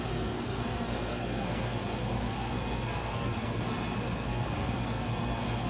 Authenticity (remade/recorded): remade